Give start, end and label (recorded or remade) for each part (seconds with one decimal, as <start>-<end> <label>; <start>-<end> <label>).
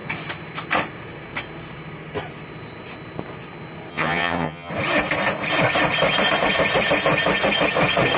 0.0-3.9 recorded; 3.9-4.7 remade; 4.7-8.2 recorded